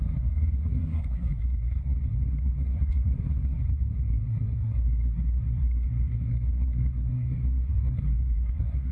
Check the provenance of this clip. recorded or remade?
remade